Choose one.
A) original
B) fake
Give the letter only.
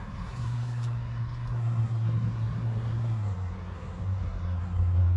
B